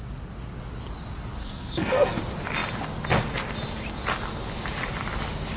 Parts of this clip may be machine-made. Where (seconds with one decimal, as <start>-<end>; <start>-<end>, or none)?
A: 1.4-2.2